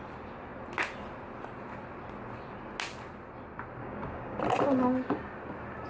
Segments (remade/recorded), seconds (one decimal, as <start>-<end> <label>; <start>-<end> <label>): 0.0-3.8 recorded; 3.8-4.4 remade; 4.4-5.9 recorded